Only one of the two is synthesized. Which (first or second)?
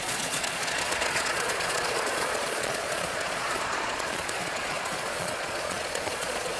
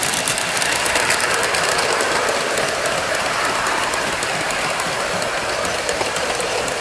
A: first